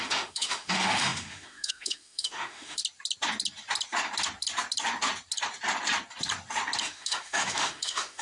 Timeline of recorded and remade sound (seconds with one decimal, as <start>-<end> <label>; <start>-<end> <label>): 0.0-2.8 remade; 2.8-6.8 recorded; 6.8-8.2 remade